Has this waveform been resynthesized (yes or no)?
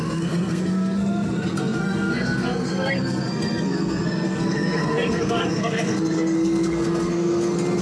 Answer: yes